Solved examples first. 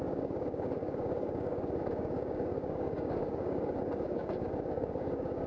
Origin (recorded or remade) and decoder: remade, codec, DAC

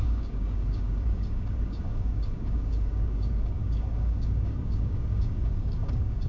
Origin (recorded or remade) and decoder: remade, codec, DAC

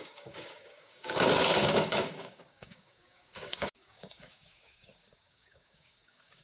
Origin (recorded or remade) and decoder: remade, codec, DAC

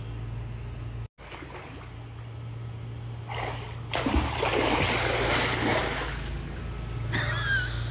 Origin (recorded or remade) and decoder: recorded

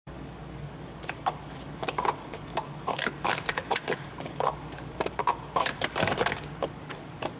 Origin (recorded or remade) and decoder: remade, codec, DAC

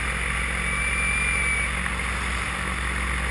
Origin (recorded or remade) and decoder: recorded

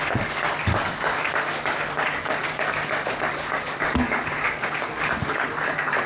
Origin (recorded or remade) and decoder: remade, codec, DAC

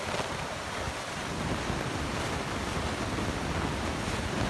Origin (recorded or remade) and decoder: recorded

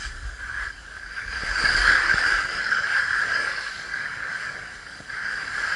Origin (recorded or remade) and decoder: remade, codec, DAC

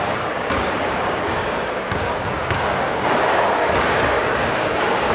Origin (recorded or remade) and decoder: remade, codec, DAC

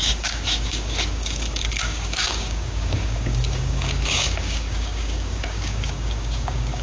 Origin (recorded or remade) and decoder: remade, codec, DAC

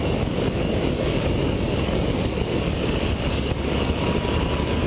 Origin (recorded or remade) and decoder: remade, codec, DAC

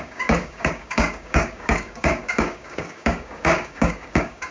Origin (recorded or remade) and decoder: remade, codec, DAC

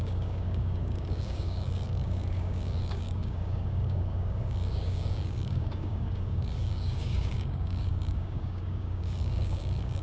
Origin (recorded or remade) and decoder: remade, codec, DAC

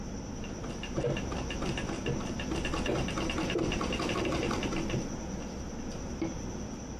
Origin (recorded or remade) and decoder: recorded